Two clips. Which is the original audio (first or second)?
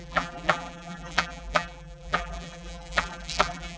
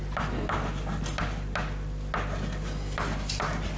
second